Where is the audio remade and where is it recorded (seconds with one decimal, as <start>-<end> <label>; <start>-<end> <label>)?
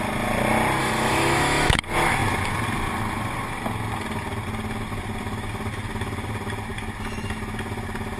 0.0-0.8 recorded; 0.8-1.8 remade; 1.8-8.2 recorded